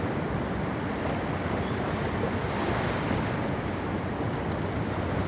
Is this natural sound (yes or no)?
yes